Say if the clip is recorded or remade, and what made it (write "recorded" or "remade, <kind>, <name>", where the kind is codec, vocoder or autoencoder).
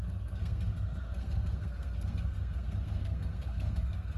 remade, codec, SNAC